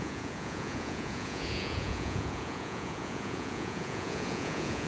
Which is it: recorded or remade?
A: remade